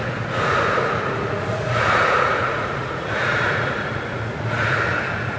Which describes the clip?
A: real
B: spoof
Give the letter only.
B